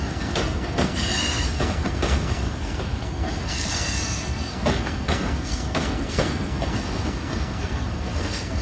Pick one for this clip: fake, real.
fake